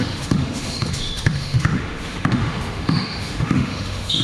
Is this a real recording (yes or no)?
no